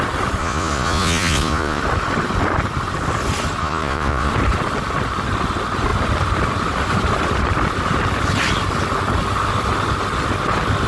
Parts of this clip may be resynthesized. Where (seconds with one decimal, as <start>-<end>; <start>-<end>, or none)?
0.4-1.8; 3.6-4.3

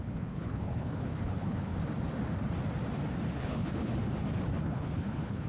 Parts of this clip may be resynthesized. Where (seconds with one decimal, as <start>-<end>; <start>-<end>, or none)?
0.0-1.7; 3.4-3.9; 4.6-5.5

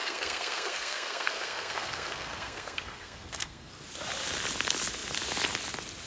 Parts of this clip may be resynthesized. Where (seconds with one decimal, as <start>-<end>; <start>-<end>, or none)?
0.0-3.7

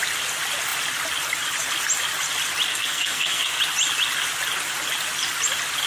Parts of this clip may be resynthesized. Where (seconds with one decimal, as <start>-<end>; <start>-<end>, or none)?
2.7-3.6

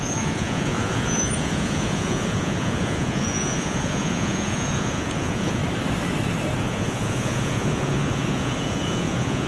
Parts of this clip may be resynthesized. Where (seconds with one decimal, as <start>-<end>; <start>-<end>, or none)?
0.0-5.6; 6.6-9.5

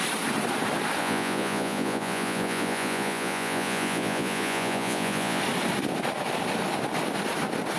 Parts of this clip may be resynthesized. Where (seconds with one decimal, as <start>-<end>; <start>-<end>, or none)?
1.0-5.4

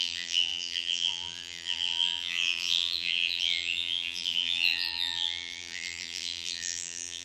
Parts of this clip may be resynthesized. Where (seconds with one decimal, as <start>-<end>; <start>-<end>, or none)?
0.0-7.2

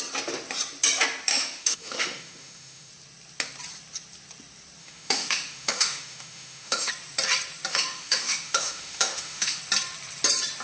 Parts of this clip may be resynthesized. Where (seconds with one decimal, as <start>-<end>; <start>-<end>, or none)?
1.3-2.9; 4.8-6.9; 7.7-9.6